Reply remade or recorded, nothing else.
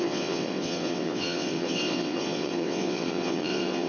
remade